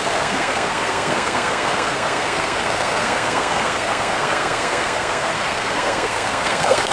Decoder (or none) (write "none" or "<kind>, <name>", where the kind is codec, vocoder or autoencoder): codec, SNAC